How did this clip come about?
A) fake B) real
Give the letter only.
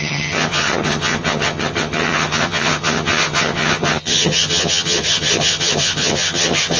A